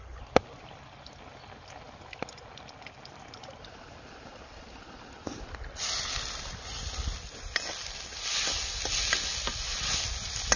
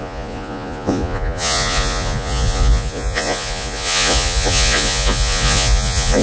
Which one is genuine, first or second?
first